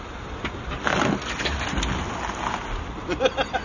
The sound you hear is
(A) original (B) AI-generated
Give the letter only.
A